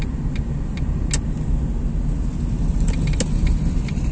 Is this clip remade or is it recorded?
recorded